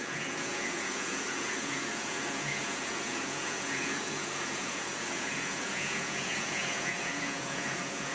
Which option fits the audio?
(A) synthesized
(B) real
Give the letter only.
A